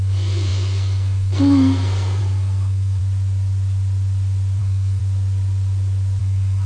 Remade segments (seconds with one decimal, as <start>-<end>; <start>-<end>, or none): 0.0-3.0; 4.6-5.0; 6.2-6.7